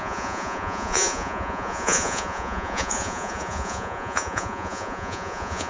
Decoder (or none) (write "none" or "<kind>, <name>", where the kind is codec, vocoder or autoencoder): vocoder, Vocos